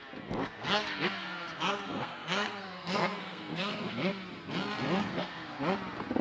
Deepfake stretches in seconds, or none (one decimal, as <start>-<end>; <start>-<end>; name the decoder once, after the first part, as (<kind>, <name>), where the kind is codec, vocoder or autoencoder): 0.4-4.1 (codec, SNAC); 5.0-5.6